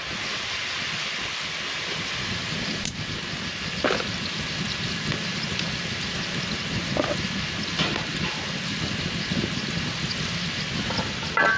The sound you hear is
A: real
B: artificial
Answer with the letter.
A